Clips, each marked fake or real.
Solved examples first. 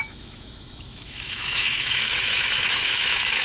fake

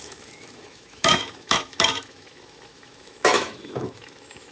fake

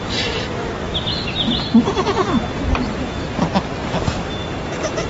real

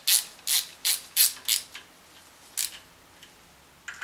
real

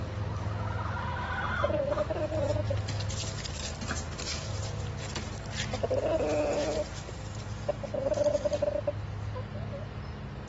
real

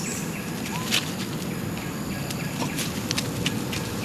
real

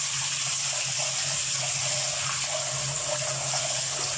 real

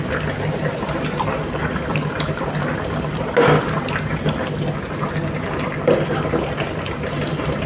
real